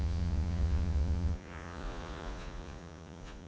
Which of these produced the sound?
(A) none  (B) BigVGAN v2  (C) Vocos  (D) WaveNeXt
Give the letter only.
C